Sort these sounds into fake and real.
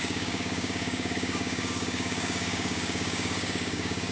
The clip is fake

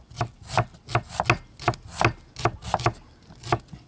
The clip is real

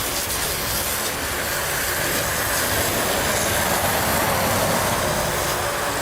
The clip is real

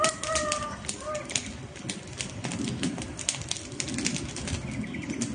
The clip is real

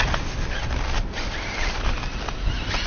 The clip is real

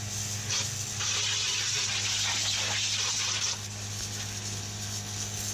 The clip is real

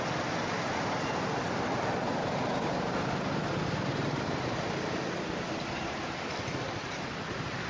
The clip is real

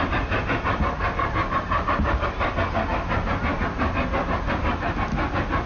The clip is real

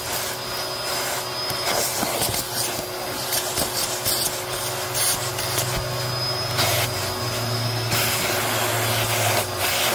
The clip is real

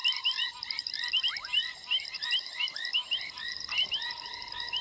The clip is fake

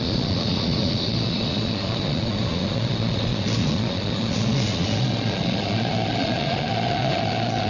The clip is fake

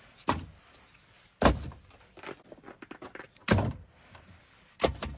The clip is fake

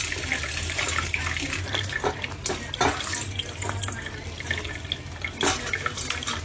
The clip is real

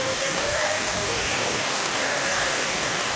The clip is fake